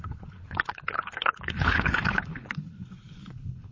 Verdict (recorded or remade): remade